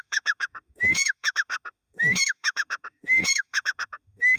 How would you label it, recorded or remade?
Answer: remade